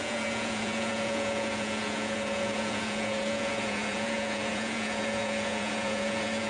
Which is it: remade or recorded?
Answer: remade